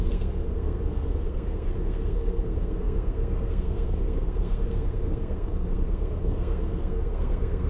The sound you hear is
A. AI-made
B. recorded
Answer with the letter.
A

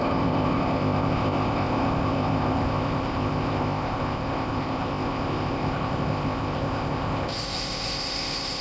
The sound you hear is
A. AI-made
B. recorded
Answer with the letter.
A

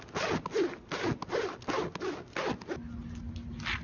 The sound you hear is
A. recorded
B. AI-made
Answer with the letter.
A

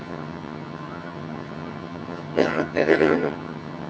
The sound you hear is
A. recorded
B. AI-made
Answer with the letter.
B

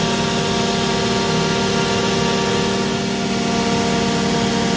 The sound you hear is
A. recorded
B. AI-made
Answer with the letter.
A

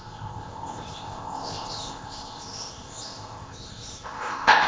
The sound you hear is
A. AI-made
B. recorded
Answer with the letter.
A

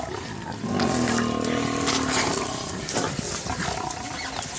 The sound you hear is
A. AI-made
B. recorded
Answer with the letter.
B